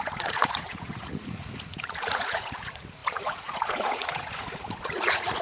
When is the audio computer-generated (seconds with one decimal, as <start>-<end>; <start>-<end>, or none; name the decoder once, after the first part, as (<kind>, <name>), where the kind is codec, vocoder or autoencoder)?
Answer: 0.0-5.4 (vocoder, Vocos)